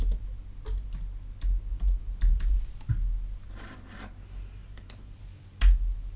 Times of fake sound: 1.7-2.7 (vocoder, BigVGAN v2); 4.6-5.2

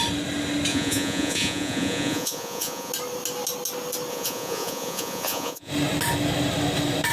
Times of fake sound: 0.7-2.9 (vocoder, Vocos); 4.1-5.7

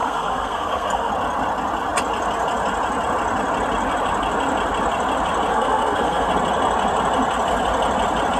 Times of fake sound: 0.0-1.1 (codec, SNAC); 5.5-6.3